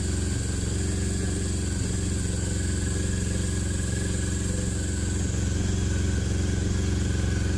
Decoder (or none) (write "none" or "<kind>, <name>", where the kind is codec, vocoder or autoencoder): none